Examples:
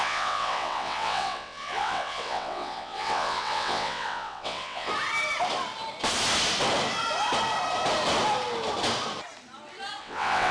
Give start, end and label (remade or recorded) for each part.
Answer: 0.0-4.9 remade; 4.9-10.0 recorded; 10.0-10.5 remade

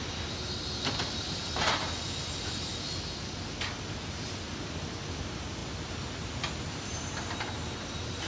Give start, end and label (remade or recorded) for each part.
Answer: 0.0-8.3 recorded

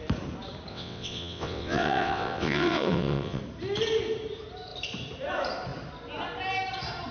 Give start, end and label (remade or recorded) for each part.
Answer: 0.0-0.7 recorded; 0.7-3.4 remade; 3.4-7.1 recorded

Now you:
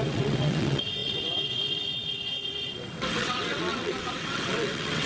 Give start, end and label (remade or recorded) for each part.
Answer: 0.0-5.1 remade

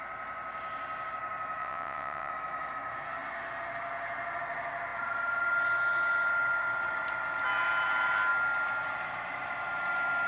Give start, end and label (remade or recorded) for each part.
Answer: 0.0-1.6 recorded; 1.6-2.3 remade; 2.3-10.3 recorded

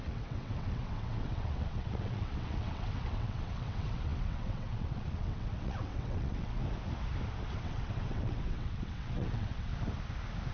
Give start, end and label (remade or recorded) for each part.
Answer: 0.0-6.6 remade; 6.6-7.5 recorded; 7.5-9.7 remade; 9.7-10.5 recorded